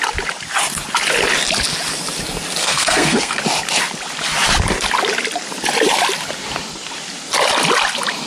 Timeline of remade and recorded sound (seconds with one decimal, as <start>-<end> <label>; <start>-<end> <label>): 0.0-2.6 recorded; 2.6-3.4 remade; 3.4-8.3 recorded